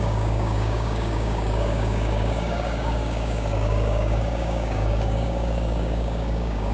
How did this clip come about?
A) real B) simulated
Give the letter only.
B